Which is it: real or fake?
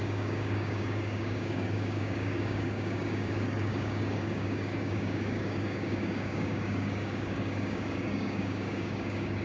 fake